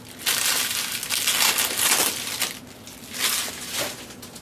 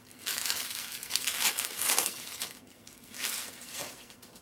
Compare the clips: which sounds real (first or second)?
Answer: first